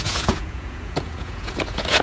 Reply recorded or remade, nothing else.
remade